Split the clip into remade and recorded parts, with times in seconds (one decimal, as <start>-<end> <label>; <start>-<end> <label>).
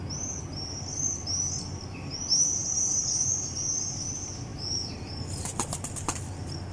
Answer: 0.0-2.6 recorded; 2.6-3.8 remade; 3.8-4.5 recorded; 4.5-5.2 remade; 5.2-6.7 recorded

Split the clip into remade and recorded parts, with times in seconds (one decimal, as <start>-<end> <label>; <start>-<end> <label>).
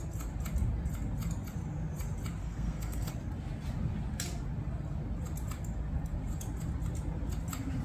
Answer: 0.0-2.4 recorded; 2.4-3.1 remade; 3.1-7.8 recorded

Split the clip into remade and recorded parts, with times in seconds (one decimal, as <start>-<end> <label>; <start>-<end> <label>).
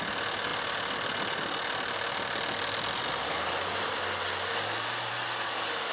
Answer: 0.0-5.9 recorded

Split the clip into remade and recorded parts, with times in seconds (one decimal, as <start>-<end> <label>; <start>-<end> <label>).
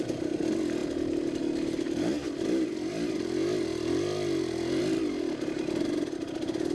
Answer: 0.0-6.7 recorded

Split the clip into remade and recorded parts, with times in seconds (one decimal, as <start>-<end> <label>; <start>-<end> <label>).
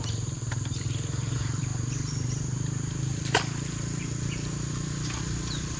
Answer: 0.0-1.7 remade; 1.7-5.2 recorded; 5.2-5.8 remade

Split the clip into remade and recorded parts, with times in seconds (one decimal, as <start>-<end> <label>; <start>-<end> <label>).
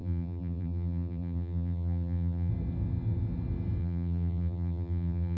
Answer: 0.0-2.5 remade; 2.5-3.8 recorded; 3.8-5.4 remade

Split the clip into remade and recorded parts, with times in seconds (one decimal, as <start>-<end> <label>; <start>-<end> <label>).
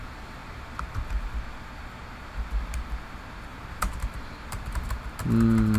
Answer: 0.0-0.4 recorded; 0.4-1.2 remade; 1.2-3.5 recorded; 3.5-4.9 remade; 4.9-5.8 recorded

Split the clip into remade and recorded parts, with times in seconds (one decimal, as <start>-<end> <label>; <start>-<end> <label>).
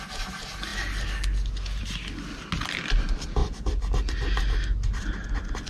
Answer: 0.0-5.7 recorded